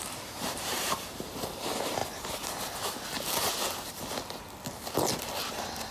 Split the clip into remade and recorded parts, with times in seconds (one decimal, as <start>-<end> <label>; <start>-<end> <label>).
0.0-2.0 remade; 2.0-5.5 recorded; 5.5-5.9 remade